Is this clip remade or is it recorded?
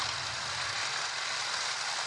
recorded